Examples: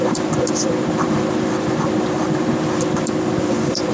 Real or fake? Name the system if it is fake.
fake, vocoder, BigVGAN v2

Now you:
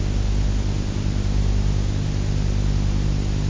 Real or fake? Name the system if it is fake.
real